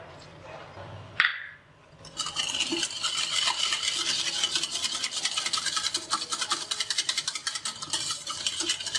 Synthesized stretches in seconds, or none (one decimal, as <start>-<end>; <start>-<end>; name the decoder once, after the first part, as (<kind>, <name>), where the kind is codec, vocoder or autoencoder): 1.3-2.0 (vocoder, Vocos)